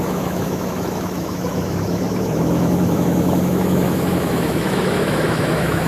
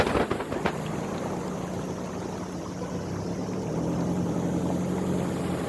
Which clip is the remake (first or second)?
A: first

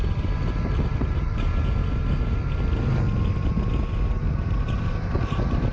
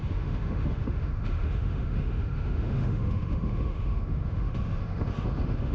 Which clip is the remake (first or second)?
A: second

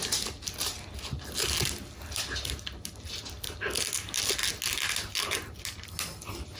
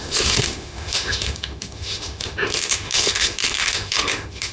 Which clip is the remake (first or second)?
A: second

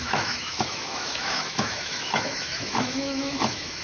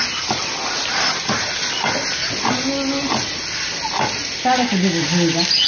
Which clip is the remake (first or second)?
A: first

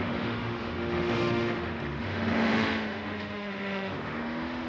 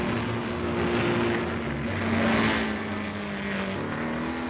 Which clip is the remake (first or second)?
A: first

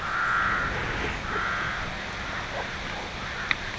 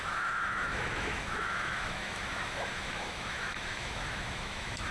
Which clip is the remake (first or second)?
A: second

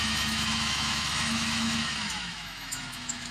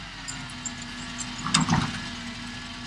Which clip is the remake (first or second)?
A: first